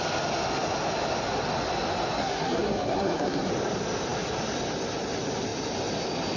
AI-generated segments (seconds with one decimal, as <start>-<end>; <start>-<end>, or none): 2.2-3.5